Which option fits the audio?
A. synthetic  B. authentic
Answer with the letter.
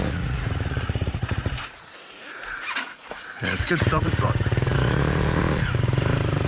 A